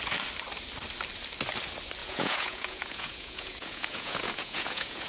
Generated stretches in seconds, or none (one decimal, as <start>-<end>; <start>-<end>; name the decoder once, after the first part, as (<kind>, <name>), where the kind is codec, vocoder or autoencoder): 2.0-5.1 (vocoder, Vocos)